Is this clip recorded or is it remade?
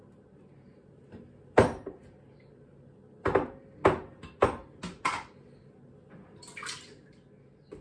recorded